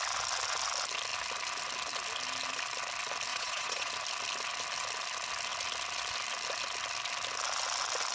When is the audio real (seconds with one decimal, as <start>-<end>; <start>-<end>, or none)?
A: 0.0-3.3; 3.9-8.1